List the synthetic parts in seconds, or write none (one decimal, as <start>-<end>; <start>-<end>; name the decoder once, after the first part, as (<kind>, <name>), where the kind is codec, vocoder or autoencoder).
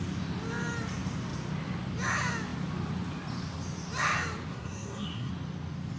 4.5-5.3 (codec, SNAC)